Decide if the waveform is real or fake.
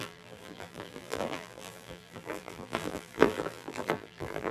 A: fake